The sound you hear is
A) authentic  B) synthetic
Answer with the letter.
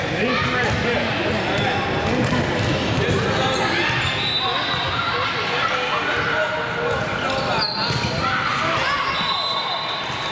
A